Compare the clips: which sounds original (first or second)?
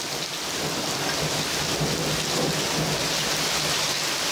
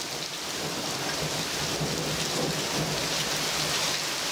first